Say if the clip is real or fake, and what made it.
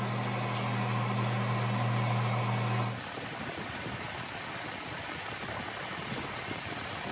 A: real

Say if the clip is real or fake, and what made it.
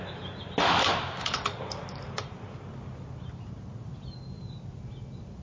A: real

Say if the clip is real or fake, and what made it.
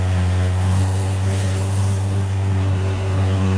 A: fake, codec, SNAC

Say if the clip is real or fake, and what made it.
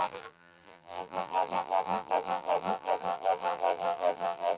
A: fake, vocoder, BigVGAN v2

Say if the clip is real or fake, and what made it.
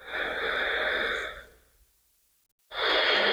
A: real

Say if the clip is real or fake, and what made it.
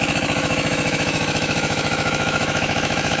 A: fake, autoencoder, DAC-VAE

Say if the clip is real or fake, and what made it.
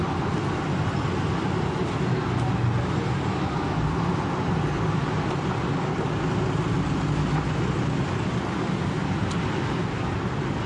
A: real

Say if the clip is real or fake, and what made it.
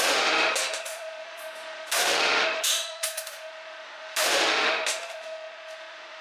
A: fake, autoencoder, DAC-VAE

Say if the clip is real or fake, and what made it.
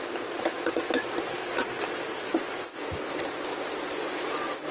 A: real